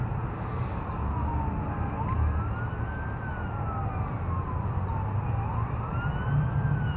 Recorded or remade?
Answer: recorded